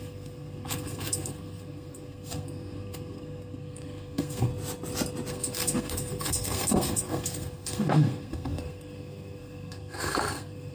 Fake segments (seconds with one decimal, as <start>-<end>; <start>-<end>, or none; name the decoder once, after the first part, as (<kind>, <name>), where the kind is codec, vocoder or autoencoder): 0.0-4.5 (codec, SNAC); 5.3-10.7